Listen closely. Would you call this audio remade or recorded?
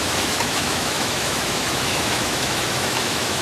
remade